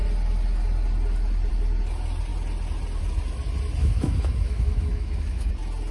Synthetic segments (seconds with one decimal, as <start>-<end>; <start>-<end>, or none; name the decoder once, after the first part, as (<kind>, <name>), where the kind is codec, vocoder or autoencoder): 3.8-5.5 (autoencoder, DAC-VAE)